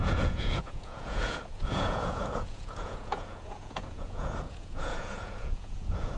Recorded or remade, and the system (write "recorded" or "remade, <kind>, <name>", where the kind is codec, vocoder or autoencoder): remade, vocoder, Vocos